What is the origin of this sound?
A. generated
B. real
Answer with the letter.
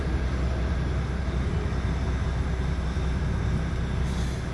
B